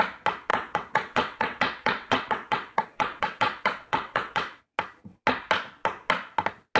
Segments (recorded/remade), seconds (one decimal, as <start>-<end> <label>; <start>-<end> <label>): 0.0-0.5 recorded; 0.5-4.6 remade; 4.6-6.8 recorded